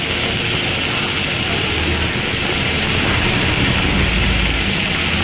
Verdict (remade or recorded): recorded